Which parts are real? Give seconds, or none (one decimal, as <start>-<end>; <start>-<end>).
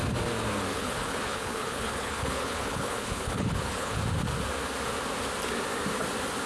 0.0-0.7; 4.0-6.5